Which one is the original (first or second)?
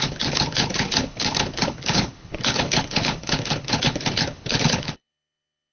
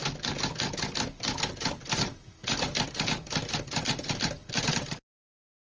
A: second